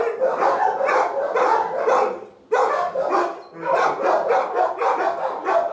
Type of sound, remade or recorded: recorded